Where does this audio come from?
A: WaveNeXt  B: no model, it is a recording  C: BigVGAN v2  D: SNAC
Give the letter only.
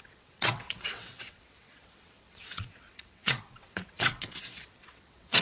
A